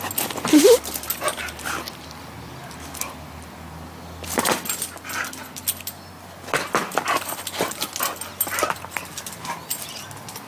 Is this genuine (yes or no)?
yes